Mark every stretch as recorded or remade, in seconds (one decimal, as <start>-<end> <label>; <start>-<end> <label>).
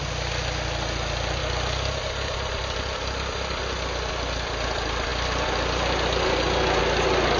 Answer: 0.0-7.4 recorded